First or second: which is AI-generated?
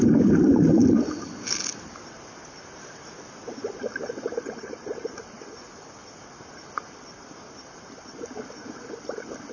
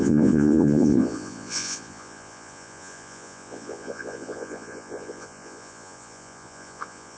second